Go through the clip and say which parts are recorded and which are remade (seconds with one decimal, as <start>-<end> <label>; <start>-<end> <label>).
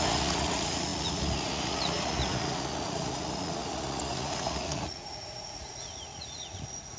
0.0-7.0 remade